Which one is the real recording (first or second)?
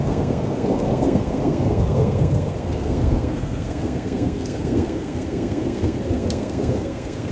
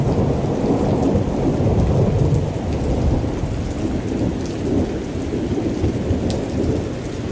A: second